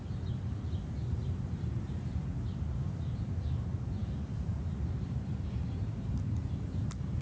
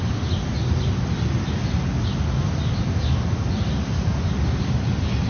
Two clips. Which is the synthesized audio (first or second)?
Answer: first